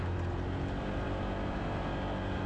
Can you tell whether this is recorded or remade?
recorded